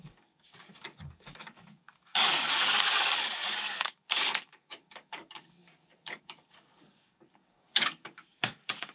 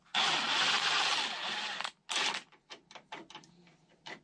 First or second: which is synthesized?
first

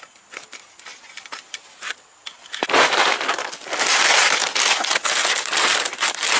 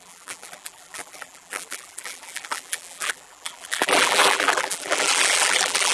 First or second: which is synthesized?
second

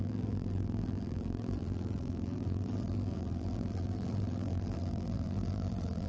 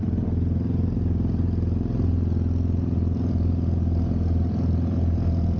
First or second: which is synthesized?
first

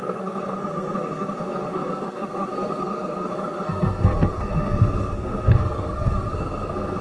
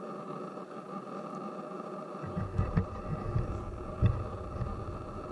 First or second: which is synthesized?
first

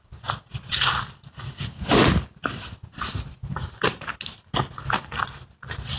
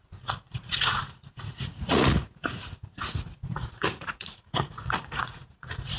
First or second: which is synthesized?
second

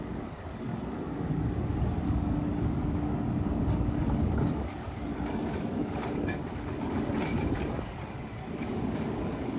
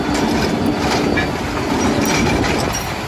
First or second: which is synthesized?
first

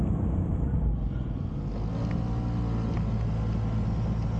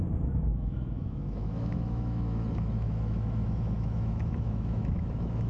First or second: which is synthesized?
second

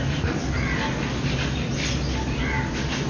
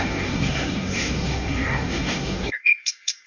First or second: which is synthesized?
second